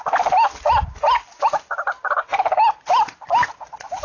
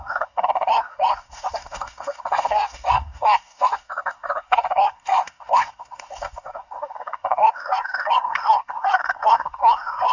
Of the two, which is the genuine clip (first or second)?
first